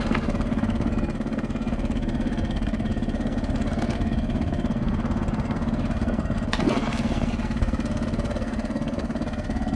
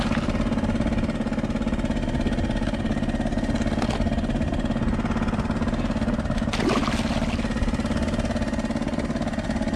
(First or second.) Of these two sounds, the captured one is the second